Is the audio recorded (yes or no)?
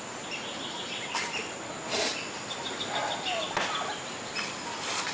yes